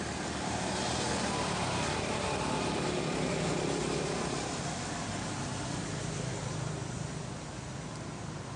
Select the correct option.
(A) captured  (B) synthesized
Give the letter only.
A